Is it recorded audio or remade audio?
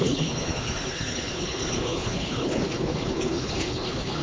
remade